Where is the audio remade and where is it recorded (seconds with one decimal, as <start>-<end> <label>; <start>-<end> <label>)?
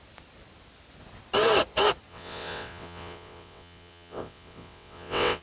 0.0-2.1 recorded; 2.1-5.4 remade